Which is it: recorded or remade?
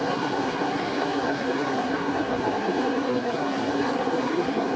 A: remade